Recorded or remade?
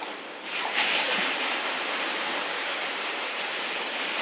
remade